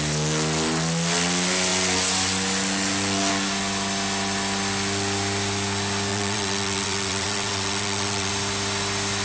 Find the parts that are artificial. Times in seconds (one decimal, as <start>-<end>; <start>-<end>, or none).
6.1-8.3